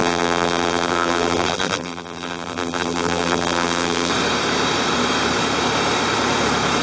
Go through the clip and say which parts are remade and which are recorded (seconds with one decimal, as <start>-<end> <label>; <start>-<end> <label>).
0.0-4.1 remade; 4.1-6.8 recorded